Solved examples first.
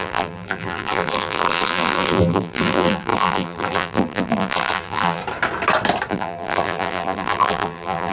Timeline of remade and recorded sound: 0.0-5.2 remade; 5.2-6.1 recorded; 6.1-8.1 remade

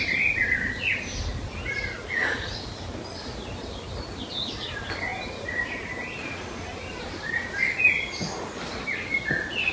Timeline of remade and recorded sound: 0.0-7.4 recorded; 7.4-8.6 remade; 8.6-9.7 recorded

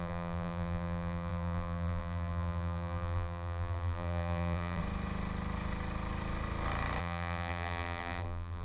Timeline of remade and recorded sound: 0.0-4.8 remade; 4.8-7.0 recorded; 7.0-8.6 remade

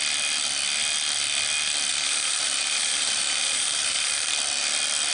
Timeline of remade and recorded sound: 0.0-1.9 recorded; 1.9-4.3 remade; 4.3-5.1 recorded